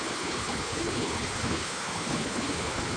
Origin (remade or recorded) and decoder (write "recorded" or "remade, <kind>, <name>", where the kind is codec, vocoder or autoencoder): remade, codec, HILCodec